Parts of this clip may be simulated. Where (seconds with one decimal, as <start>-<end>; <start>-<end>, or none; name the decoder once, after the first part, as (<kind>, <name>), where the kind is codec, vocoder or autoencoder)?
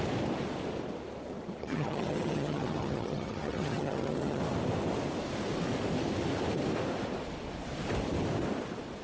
1.6-4.4 (vocoder, HiFi-GAN)